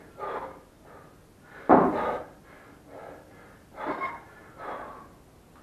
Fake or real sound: real